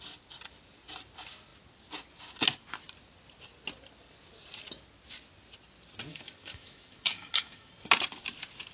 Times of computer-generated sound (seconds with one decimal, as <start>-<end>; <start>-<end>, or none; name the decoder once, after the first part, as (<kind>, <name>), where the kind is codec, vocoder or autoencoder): 6.1-7.7 (autoencoder, DAC-VAE)